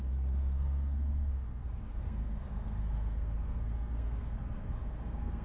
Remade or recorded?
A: remade